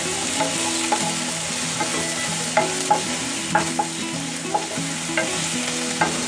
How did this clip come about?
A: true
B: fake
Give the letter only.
A